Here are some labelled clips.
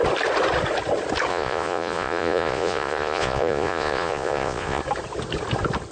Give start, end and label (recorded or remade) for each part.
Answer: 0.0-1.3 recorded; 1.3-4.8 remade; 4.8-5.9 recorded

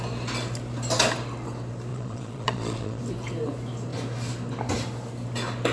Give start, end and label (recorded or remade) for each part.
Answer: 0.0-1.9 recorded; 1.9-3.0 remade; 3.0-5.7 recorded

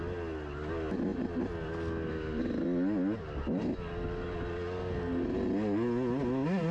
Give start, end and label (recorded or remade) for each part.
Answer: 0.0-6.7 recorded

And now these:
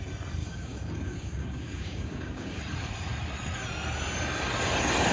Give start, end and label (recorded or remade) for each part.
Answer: 0.0-0.4 recorded; 0.4-2.6 remade; 2.6-5.1 recorded

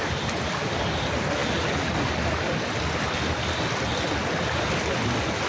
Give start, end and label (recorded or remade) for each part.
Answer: 0.0-5.5 recorded

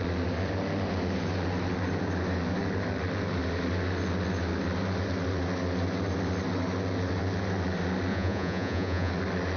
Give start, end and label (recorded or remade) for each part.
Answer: 0.0-8.1 recorded; 8.1-9.1 remade; 9.1-9.6 recorded

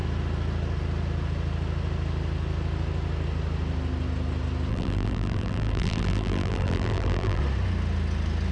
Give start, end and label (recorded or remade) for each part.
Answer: 0.0-4.7 recorded; 4.7-7.4 remade; 7.4-8.5 recorded